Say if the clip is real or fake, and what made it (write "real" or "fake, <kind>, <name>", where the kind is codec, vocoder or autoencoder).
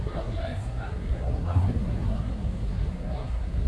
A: fake, codec, SNAC